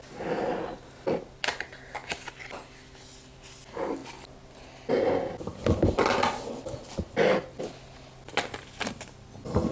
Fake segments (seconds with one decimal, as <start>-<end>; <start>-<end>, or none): none